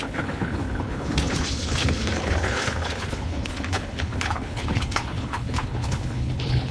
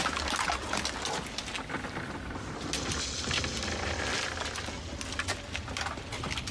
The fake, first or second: first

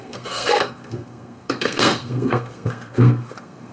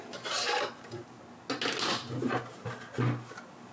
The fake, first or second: first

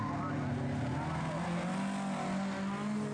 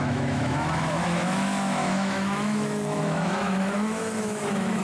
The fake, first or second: second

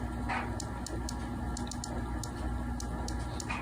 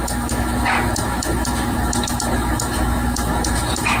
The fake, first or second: second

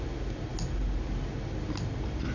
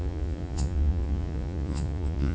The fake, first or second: second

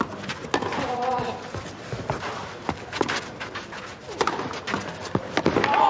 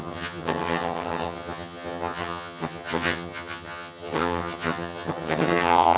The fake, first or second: second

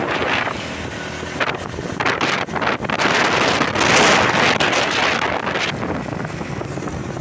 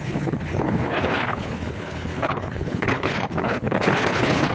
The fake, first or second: second